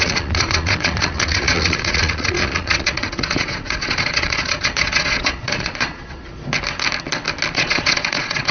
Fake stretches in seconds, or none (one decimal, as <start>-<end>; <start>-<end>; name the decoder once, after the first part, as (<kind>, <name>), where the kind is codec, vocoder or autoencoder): 0.0-6.2 (vocoder, Vocos); 7.5-8.5